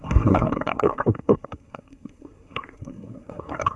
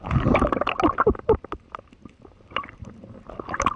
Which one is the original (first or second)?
second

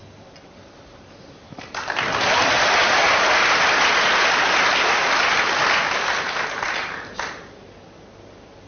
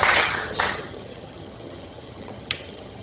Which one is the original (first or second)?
first